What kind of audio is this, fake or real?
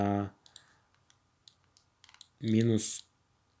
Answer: real